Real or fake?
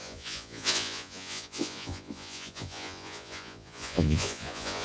fake